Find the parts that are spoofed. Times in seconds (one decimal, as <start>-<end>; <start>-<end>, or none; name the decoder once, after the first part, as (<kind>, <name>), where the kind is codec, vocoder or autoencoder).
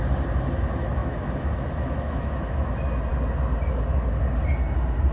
1.0-2.7 (autoencoder, DAC-VAE)